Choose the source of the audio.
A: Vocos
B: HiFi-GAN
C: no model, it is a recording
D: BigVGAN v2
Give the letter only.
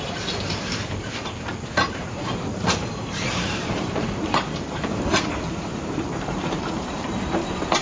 D